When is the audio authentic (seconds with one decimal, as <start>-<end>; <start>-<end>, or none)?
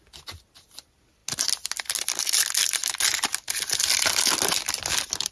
0.0-5.3